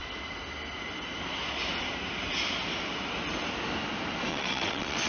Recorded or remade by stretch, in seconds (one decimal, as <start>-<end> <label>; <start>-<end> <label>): 0.0-4.3 recorded; 4.3-5.1 remade

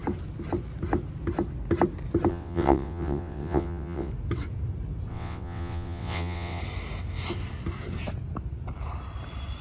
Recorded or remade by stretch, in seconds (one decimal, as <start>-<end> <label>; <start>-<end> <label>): 0.0-2.3 recorded; 2.3-4.1 remade; 4.1-5.1 recorded; 5.1-6.6 remade; 6.6-9.6 recorded

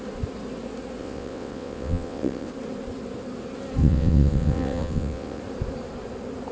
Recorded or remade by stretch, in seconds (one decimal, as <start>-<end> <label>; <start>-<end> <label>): 0.0-1.0 recorded; 1.0-2.5 remade; 2.5-3.8 recorded; 3.8-5.4 remade; 5.4-6.5 recorded

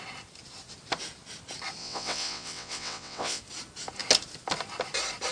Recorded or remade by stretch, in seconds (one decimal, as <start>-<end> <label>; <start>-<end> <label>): 0.0-1.8 recorded; 1.8-3.4 remade; 3.4-5.3 recorded

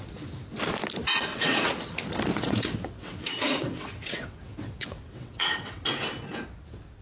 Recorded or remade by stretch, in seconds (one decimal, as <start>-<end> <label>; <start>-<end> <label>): 0.0-1.3 recorded; 1.3-1.9 remade; 1.9-2.3 recorded; 2.3-5.9 remade; 5.9-7.0 recorded